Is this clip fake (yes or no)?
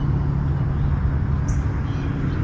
no